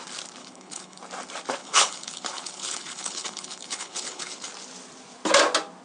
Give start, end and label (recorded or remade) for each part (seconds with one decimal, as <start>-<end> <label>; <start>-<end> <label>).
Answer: 0.0-0.4 recorded; 0.4-1.0 remade; 1.0-1.6 recorded; 1.6-4.5 remade; 4.5-5.8 recorded